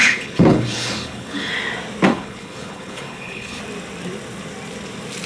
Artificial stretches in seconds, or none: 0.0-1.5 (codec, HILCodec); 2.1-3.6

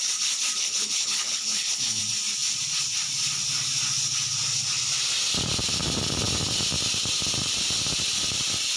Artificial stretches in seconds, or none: 0.6-2.0 (codec, HILCodec)

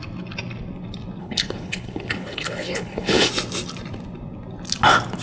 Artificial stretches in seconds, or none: 1.2-3.3 (codec, HILCodec)

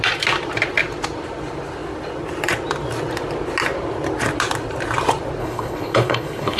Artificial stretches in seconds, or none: 5.4-6.6 (codec, HILCodec)

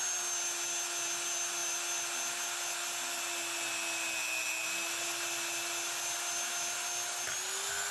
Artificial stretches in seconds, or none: none

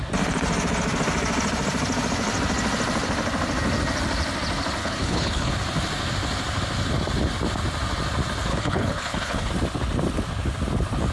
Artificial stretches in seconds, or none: 4.8-5.5 (codec, HILCodec); 8.5-9.5

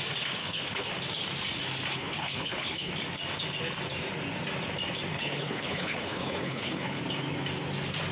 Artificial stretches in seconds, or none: 0.4-0.9 (codec, HILCodec); 1.9-2.9; 5.1-7.0